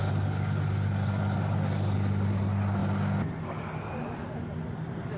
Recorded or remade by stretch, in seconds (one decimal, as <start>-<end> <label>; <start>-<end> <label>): 0.0-5.2 recorded